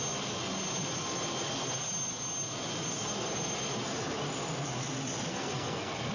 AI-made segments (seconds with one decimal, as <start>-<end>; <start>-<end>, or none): 5.3-6.1

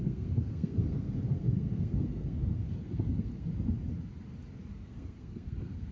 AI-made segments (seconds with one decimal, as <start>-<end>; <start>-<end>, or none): 0.0-3.5; 4.7-5.9

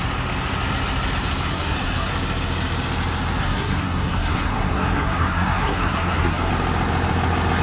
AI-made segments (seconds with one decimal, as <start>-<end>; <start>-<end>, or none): 1.5-2.1; 3.4-6.5